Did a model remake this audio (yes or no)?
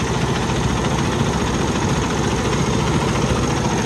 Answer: no